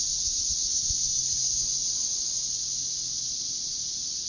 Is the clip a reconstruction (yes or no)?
no